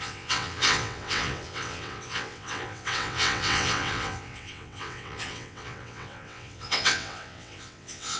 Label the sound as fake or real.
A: fake